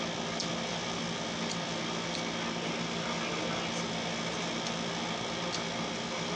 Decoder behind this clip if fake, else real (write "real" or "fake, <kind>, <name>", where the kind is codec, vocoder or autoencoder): real